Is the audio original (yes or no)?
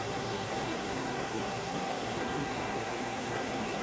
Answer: no